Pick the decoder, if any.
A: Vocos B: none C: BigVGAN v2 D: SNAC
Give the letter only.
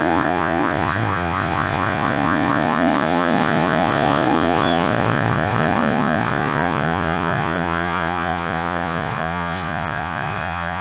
A